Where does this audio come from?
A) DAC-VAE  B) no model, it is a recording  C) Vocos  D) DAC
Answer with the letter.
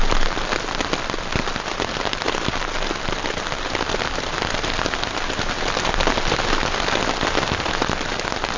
B